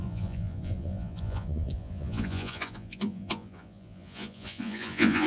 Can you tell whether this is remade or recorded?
remade